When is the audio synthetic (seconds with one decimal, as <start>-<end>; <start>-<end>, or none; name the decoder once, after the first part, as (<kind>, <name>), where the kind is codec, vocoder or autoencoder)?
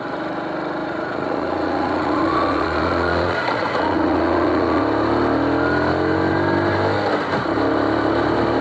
0.8-4.8 (vocoder, Vocos)